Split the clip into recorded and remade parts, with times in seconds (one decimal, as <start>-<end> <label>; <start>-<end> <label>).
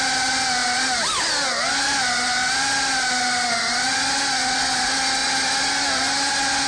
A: 0.0-6.7 recorded